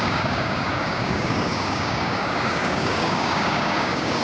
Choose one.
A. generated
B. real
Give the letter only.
A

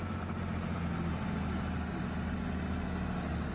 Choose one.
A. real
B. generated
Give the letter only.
A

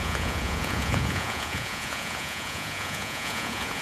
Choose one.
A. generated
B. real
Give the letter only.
A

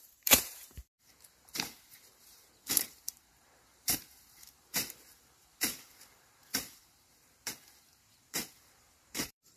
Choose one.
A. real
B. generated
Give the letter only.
B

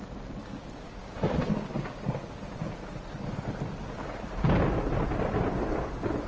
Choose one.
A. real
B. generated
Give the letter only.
A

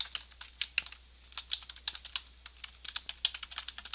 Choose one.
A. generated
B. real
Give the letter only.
B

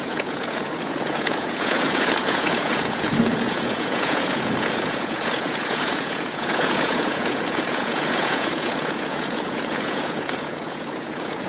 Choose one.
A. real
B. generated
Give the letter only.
B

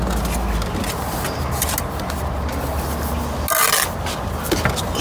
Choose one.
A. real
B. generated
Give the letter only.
A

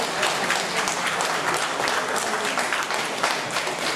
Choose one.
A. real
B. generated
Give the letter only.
A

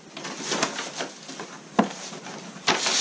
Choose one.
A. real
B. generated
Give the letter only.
A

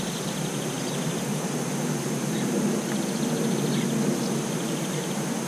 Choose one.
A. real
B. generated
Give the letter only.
A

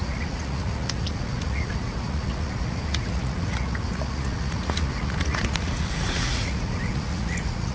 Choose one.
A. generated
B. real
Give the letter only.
A